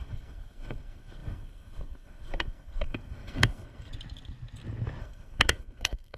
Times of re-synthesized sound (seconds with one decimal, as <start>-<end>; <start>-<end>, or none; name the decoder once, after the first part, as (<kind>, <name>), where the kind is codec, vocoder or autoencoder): 0.0-3.9 (codec, SNAC); 5.0-6.2